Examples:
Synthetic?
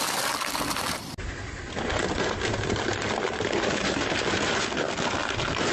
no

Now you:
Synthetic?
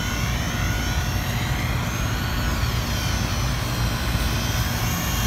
no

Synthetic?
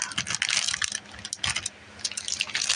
no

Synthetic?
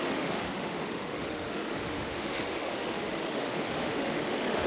yes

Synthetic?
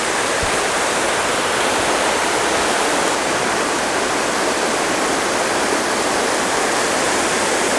no